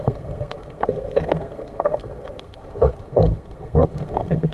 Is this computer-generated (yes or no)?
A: yes